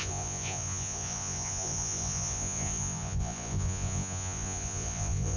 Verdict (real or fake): fake